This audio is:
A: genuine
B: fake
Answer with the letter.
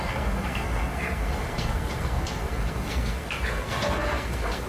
B